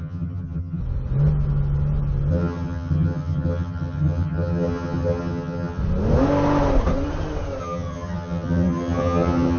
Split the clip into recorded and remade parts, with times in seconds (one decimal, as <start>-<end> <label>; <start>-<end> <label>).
0.0-0.8 remade; 0.8-2.3 recorded; 2.3-5.8 remade; 5.8-7.6 recorded; 7.6-9.6 remade